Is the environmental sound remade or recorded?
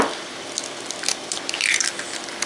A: recorded